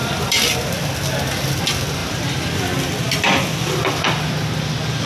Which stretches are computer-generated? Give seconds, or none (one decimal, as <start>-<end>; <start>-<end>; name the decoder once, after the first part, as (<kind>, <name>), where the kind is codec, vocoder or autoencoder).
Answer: 0.0-1.1 (vocoder, BigVGAN v2); 2.0-4.0